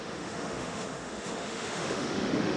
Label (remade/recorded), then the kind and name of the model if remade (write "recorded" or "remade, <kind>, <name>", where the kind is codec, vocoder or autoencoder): remade, autoencoder, DAC-VAE